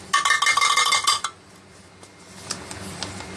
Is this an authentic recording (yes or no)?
yes